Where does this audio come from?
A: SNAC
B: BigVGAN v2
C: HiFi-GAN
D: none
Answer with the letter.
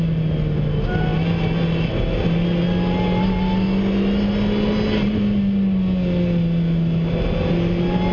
D